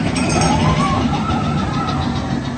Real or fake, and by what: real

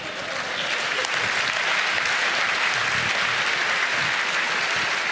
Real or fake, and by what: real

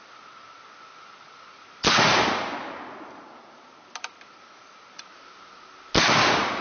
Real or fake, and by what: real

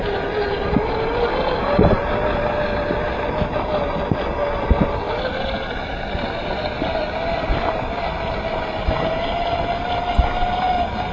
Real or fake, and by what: real